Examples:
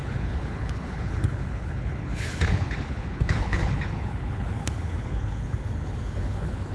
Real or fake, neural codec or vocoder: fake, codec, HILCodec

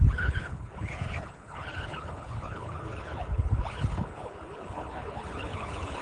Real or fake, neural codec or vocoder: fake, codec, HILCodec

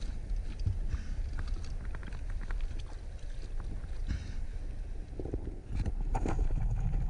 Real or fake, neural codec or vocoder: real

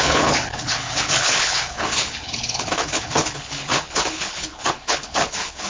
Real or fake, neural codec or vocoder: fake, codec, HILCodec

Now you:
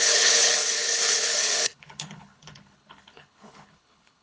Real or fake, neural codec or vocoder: fake, codec, HILCodec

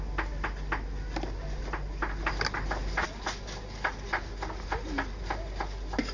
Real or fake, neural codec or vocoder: real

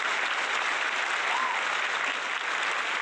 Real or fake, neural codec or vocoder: real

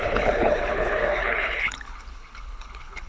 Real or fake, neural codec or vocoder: fake, codec, HILCodec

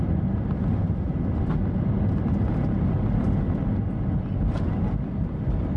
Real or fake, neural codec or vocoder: real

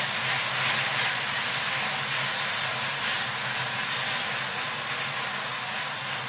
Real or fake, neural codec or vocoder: real